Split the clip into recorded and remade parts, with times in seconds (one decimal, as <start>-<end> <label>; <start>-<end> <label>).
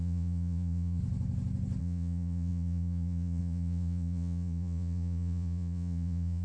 0.0-1.0 remade; 1.0-1.8 recorded; 1.8-6.4 remade